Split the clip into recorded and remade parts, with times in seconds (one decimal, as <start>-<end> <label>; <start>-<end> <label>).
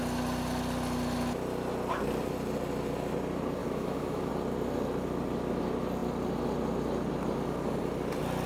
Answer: 0.0-3.6 recorded; 3.6-4.3 remade; 4.3-8.5 recorded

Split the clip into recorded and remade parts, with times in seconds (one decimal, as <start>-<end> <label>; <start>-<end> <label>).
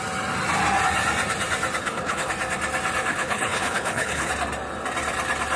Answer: 0.0-1.8 recorded; 1.8-2.3 remade; 2.3-3.1 recorded; 3.1-4.3 remade; 4.3-5.6 recorded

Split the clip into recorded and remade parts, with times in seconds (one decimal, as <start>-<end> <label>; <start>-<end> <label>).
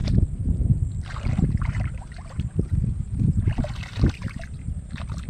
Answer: 0.0-3.2 remade; 3.2-5.3 recorded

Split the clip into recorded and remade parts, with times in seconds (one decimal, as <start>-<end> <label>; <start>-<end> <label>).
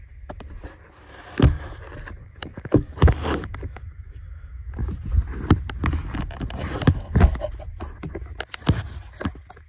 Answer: 0.0-2.2 recorded; 2.2-4.7 remade; 4.7-9.7 recorded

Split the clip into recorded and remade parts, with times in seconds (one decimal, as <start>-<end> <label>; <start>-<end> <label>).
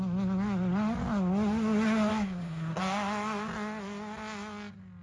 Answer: 0.0-2.1 recorded; 2.1-2.8 remade; 2.8-5.0 recorded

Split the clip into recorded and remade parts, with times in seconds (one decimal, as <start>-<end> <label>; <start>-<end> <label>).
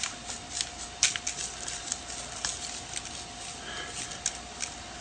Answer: 0.0-5.0 recorded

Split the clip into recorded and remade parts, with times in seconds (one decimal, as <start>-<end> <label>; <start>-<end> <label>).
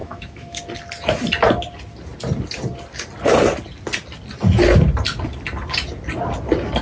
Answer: 0.0-0.6 remade; 0.6-6.8 recorded